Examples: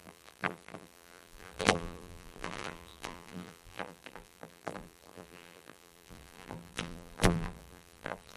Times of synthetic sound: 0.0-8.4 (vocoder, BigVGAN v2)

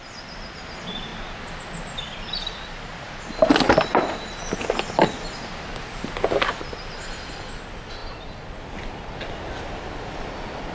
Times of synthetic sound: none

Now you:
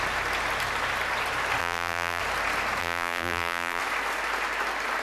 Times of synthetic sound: 1.6-2.2 (vocoder, BigVGAN v2); 2.8-3.8

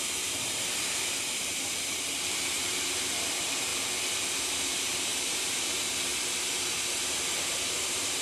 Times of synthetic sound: 0.0-3.7 (vocoder, BigVGAN v2); 4.2-6.1; 7.4-8.2

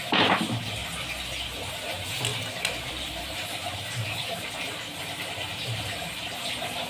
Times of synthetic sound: 2.3-6.4 (vocoder, BigVGAN v2)

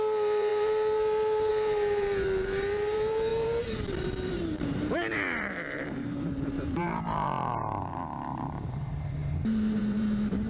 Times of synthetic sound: 0.0-10.5 (vocoder, BigVGAN v2)

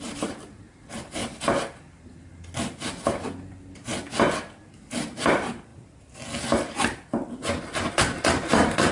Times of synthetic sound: 0.0-1.2 (vocoder, BigVGAN v2); 2.8-3.9; 4.7-5.7; 7.9-8.9

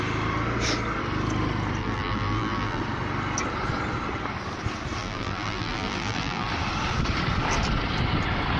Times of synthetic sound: 1.8-2.8 (vocoder, BigVGAN v2); 5.0-6.5